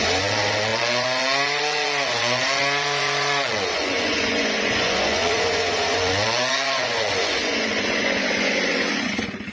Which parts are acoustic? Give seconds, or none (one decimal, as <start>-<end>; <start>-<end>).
none